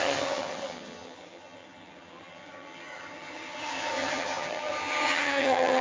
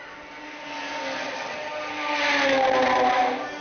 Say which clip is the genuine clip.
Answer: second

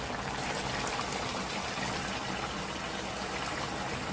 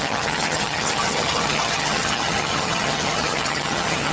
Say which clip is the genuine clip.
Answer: first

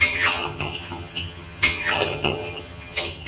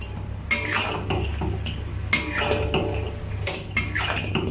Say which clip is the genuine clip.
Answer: second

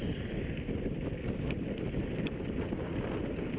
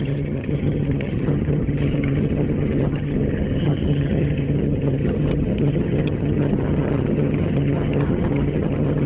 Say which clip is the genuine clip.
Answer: first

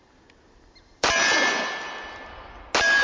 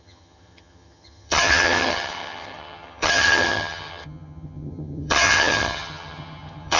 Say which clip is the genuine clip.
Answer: first